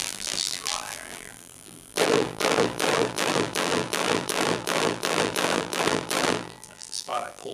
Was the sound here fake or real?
fake